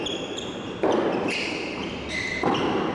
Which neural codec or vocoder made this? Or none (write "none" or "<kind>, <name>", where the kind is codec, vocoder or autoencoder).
none